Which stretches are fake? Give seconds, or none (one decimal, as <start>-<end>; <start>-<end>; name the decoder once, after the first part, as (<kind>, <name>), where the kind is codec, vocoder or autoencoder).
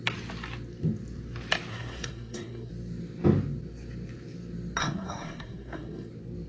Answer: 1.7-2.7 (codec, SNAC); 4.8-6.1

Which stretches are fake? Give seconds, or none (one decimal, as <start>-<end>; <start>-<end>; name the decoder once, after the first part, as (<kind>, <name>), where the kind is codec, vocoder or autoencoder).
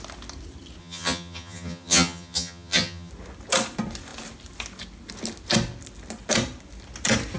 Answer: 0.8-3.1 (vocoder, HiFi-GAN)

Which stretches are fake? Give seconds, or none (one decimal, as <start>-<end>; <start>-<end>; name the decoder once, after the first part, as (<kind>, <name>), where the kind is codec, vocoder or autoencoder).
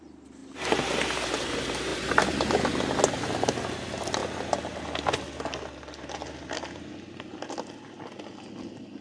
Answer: 1.9-2.6 (vocoder, BigVGAN v2)